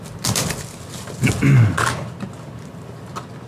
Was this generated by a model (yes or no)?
no